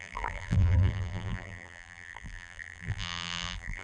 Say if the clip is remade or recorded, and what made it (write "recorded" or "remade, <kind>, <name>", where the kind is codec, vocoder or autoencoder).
remade, vocoder, BigVGAN v2